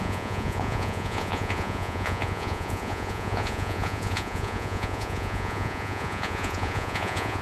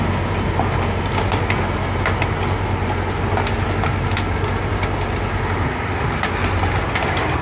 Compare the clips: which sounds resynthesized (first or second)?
first